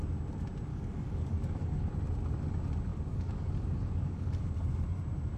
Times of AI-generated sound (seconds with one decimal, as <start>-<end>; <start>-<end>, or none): 0.7-1.9; 2.9-4.4